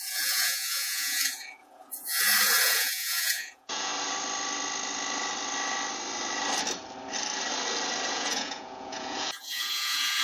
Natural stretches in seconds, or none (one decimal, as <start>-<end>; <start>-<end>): 3.9-8.1